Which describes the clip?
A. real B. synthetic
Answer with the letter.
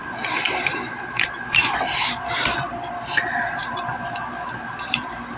B